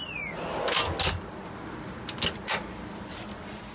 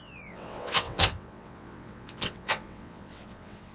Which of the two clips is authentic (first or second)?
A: first